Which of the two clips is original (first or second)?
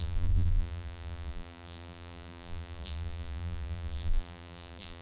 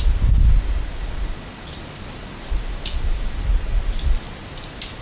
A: second